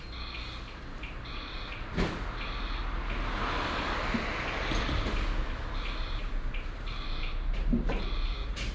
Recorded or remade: recorded